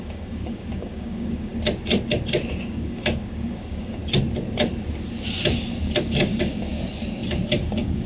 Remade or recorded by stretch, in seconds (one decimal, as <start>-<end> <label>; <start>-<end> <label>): 0.0-1.5 remade; 1.5-2.5 recorded; 2.5-4.0 remade; 4.0-6.0 recorded; 6.0-6.7 remade; 6.7-7.6 recorded; 7.6-8.1 remade